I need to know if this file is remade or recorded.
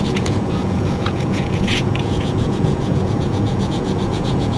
remade